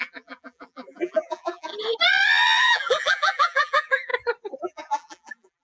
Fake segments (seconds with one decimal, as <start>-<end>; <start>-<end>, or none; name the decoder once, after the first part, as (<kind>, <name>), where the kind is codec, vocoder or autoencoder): 0.0-1.7 (vocoder, BigVGAN v2); 2.6-4.1; 4.6-5.6